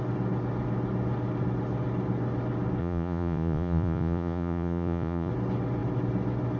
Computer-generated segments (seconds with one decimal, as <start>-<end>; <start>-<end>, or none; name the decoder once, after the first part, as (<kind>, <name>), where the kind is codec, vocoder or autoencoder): 2.8-5.3 (vocoder, Vocos)